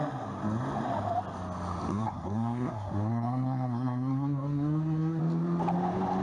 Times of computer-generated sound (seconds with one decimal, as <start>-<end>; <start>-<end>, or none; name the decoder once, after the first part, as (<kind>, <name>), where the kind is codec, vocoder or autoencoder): 1.9-5.2 (codec, SNAC)